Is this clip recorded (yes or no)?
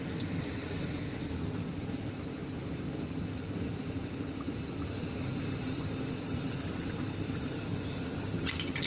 yes